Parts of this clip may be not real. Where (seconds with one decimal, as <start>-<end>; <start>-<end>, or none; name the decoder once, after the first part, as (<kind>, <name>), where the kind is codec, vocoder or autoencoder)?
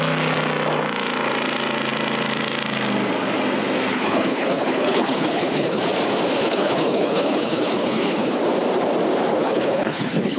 3.9-5.8 (codec, HILCodec); 6.4-8.4; 9.3-10.4